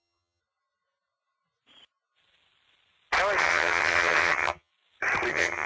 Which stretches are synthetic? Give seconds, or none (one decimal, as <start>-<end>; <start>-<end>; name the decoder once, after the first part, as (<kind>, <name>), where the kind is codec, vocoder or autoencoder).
0.0-0.4 (vocoder, HiFi-GAN); 3.4-4.7; 5.3-5.7